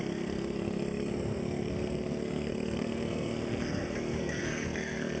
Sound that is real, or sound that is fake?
fake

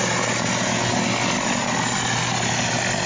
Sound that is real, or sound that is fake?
real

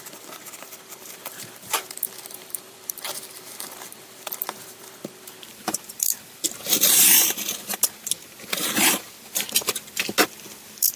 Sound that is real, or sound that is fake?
fake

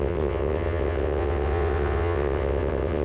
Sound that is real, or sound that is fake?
fake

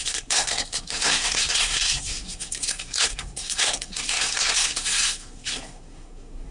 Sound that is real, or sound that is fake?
fake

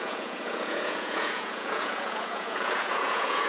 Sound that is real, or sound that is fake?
fake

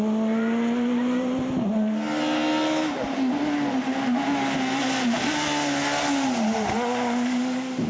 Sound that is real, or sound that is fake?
real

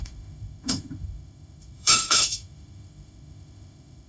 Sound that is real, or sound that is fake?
fake